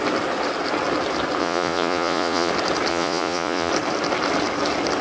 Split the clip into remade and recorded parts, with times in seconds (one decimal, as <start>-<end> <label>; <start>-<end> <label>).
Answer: 0.0-1.4 recorded; 1.4-2.5 remade; 2.5-2.9 recorded; 2.9-3.7 remade; 3.7-5.0 recorded